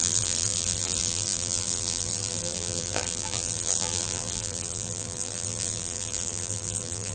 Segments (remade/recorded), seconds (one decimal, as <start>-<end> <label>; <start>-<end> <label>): 0.0-7.1 remade